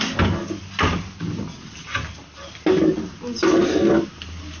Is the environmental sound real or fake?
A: real